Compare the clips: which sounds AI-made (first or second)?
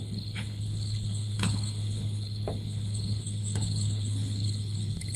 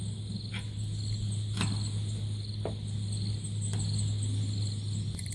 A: first